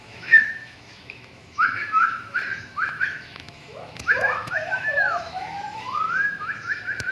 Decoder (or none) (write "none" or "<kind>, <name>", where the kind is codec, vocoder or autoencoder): autoencoder, DAC-VAE